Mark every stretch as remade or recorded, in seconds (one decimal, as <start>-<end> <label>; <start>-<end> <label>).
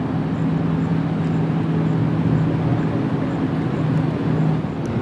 0.0-5.0 recorded